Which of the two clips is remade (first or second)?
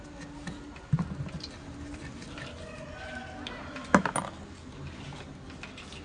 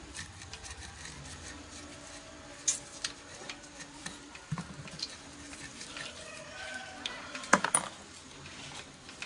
second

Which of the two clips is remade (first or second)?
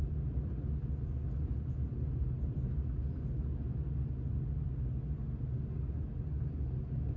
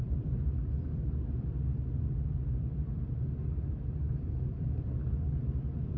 second